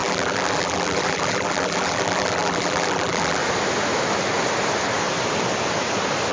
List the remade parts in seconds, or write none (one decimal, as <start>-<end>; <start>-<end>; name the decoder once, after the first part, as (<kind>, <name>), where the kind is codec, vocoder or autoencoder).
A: 0.0-3.4 (vocoder, BigVGAN v2)